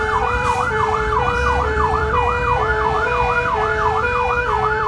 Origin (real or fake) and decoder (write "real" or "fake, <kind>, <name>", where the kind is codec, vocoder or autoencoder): fake, vocoder, BigVGAN v2